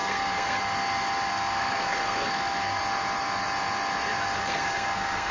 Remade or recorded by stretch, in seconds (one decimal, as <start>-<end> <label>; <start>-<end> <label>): 0.0-0.6 remade; 0.6-1.3 recorded; 1.3-2.8 remade; 2.8-4.4 recorded; 4.4-5.3 remade